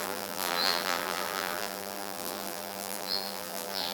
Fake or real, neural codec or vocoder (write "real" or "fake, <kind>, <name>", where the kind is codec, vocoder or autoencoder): fake, vocoder, BigVGAN v2